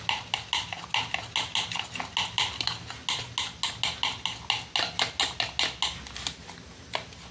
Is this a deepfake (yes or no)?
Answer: no